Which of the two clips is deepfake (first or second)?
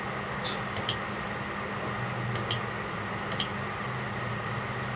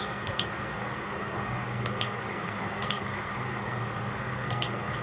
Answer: second